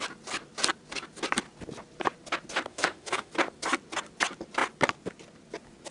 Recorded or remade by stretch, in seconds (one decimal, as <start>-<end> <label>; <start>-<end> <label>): 0.0-2.7 recorded; 2.7-3.3 remade; 3.3-5.9 recorded